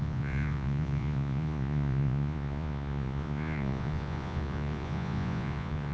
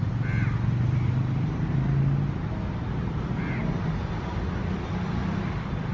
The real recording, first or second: second